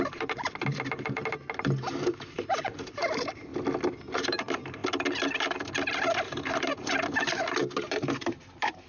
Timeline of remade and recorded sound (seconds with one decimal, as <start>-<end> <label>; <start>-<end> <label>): 0.0-3.5 remade; 3.5-4.0 recorded; 4.0-4.8 remade; 4.8-6.2 recorded; 6.2-8.9 remade